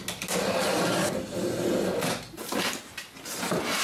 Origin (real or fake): real